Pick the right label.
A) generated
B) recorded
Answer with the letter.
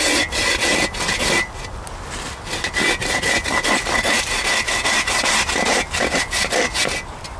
B